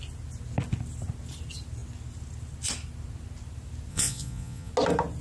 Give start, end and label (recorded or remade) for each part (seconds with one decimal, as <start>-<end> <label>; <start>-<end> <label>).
0.0-3.9 recorded; 3.9-4.7 remade; 4.7-5.2 recorded